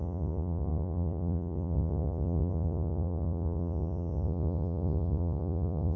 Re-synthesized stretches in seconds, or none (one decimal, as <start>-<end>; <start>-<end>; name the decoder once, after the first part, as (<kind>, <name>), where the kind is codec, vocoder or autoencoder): 0.0-6.0 (vocoder, Vocos)